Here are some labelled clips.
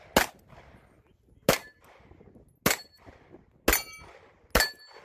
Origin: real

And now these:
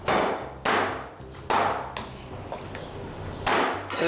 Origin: real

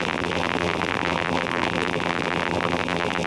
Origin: fake